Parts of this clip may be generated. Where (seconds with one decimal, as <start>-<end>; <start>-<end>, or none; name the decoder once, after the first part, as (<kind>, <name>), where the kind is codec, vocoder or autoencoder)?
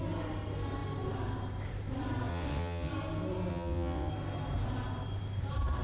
2.3-2.9 (vocoder, WaveNeXt); 3.5-4.1